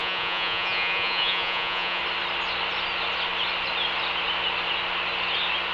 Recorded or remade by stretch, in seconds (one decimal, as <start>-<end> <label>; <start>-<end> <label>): 0.0-2.0 remade; 2.0-5.7 recorded

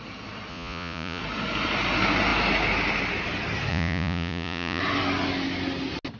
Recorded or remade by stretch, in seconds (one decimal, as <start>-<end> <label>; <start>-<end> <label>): 0.0-0.5 recorded; 0.5-1.2 remade; 1.2-3.7 recorded; 3.7-4.8 remade; 4.8-6.2 recorded

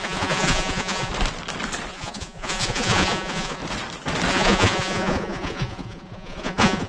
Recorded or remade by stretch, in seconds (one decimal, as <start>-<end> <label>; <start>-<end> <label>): 0.0-1.1 remade; 1.1-1.9 recorded; 1.9-3.6 remade; 3.6-4.3 recorded; 4.3-6.9 remade

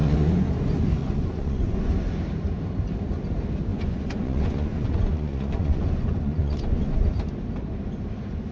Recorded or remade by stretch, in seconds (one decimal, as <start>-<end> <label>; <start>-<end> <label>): 0.0-0.5 remade; 0.5-1.0 recorded; 1.0-2.0 remade; 2.0-3.7 recorded; 3.7-7.1 remade; 7.1-8.5 recorded

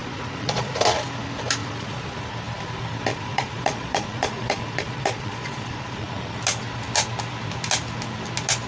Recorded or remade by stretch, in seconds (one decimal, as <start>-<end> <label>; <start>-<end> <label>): 0.0-0.7 remade; 0.7-1.6 recorded; 1.6-2.2 remade; 2.2-3.1 recorded; 3.1-6.4 remade; 6.4-8.7 recorded